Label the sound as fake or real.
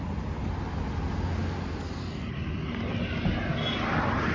real